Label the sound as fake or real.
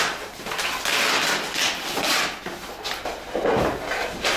real